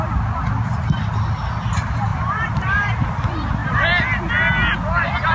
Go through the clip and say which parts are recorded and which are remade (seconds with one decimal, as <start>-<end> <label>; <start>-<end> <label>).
0.0-2.1 recorded; 2.1-3.0 remade; 3.0-3.6 recorded; 3.6-4.2 remade; 4.2-5.3 recorded